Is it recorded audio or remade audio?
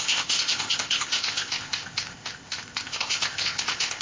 remade